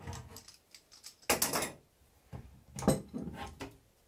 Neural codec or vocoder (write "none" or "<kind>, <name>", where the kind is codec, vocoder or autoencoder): none